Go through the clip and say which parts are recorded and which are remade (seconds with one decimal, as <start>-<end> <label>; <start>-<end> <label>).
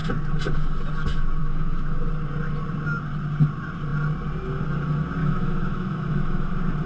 0.0-1.4 recorded; 1.4-2.1 remade; 2.1-5.2 recorded; 5.2-6.5 remade; 6.5-6.9 recorded